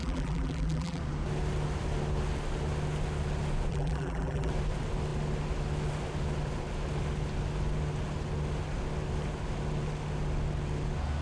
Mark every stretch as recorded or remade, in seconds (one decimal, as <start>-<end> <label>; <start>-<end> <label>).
0.0-1.0 remade; 1.0-3.7 recorded; 3.7-4.5 remade; 4.5-11.2 recorded